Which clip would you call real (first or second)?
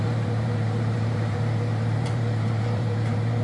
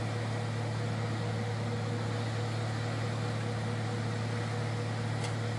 second